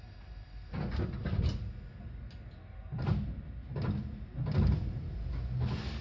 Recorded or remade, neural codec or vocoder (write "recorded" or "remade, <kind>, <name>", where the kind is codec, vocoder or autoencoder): recorded